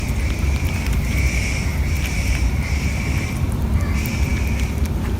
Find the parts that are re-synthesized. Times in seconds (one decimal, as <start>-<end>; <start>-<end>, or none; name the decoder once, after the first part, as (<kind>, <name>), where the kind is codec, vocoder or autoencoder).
none

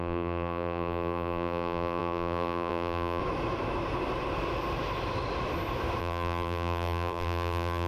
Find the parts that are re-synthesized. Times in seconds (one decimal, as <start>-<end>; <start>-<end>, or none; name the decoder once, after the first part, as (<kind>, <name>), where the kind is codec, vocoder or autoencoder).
0.0-3.2 (vocoder, BigVGAN v2); 6.0-7.9

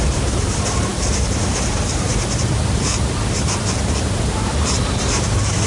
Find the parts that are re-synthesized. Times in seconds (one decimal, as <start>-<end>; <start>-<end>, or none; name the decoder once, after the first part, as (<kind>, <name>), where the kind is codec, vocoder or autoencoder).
0.0-5.7 (vocoder, BigVGAN v2)

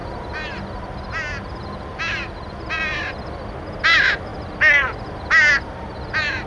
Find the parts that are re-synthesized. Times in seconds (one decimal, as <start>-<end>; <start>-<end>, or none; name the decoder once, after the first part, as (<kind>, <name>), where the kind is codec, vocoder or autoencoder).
none

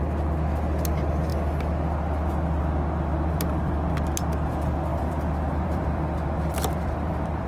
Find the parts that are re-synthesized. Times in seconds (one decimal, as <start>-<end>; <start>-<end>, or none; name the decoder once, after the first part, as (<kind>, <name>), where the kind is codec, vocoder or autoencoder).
3.1-3.9 (vocoder, BigVGAN v2); 4.9-7.5